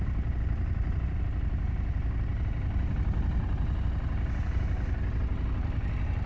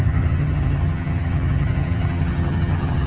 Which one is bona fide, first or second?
first